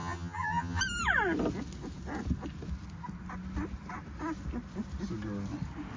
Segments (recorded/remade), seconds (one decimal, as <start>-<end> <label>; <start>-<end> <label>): 0.0-0.8 remade; 0.8-6.0 recorded